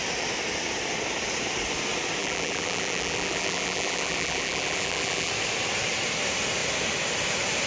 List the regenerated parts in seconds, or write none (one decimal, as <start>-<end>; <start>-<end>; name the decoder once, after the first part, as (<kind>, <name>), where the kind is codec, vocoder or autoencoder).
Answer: 2.2-5.3 (vocoder, BigVGAN v2)

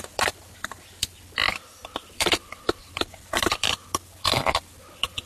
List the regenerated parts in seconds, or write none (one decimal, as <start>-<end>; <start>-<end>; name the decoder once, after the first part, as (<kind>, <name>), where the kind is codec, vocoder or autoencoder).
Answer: 0.0-5.3 (vocoder, BigVGAN v2)

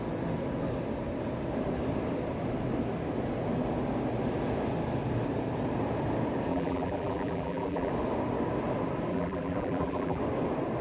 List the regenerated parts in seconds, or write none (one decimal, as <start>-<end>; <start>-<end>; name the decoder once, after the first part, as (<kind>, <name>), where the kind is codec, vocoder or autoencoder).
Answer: 6.5-7.9 (vocoder, BigVGAN v2); 9.1-10.2